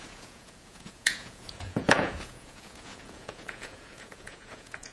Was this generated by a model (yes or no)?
yes